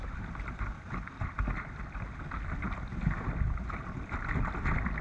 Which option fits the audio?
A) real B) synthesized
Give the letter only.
A